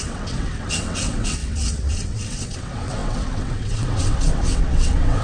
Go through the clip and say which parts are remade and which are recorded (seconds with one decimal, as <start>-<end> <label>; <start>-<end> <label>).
0.0-5.2 remade